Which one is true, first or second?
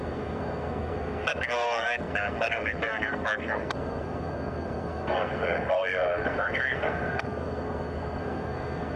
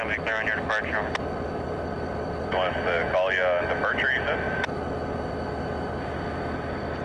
second